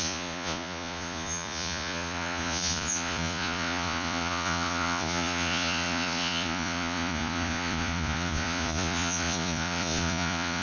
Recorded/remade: remade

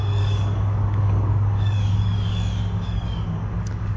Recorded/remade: remade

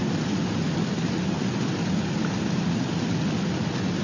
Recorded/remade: recorded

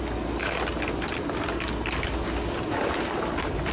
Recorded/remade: recorded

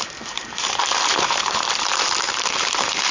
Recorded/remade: remade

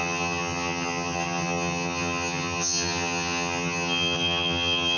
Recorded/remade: remade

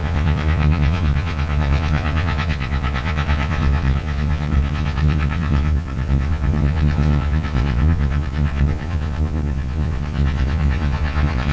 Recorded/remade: remade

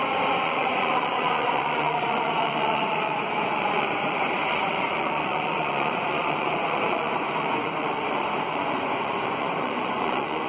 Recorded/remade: remade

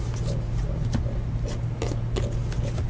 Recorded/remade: recorded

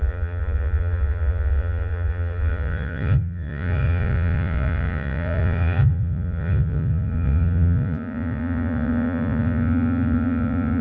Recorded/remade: remade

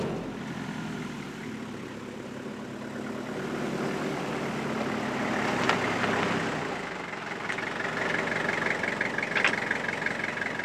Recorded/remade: recorded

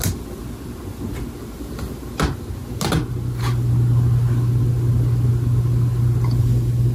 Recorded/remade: recorded